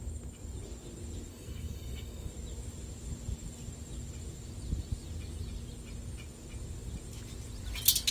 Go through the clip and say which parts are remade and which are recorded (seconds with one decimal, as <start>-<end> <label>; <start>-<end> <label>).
0.0-1.3 recorded; 1.3-2.3 remade; 2.3-8.1 recorded